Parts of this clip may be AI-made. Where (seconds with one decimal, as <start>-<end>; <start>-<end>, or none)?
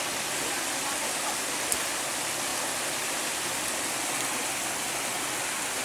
none